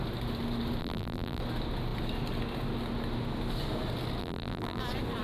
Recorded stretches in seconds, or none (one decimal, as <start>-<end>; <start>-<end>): 0.0-0.8; 1.4-4.2; 4.8-5.2